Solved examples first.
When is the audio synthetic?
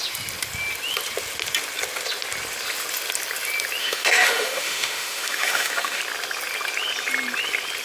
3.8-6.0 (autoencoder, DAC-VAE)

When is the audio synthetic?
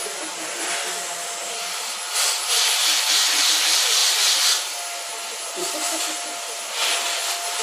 none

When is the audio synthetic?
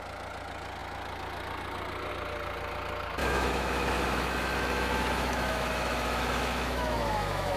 3.2-7.6 (autoencoder, DAC-VAE)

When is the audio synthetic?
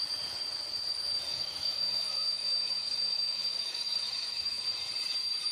1.3-4.6 (autoencoder, DAC-VAE)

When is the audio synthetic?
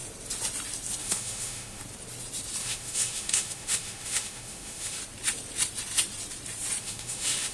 1.0-1.8 (autoencoder, DAC-VAE); 2.6-5.0; 6.8-7.5